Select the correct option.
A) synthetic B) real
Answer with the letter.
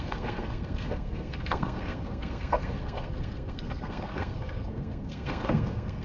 A